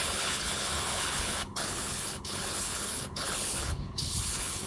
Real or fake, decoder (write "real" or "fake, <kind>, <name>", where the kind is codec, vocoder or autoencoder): fake, codec, HILCodec